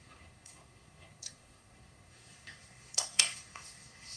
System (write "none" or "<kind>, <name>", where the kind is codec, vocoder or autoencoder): codec, SNAC